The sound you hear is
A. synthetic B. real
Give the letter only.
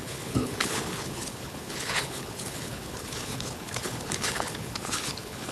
A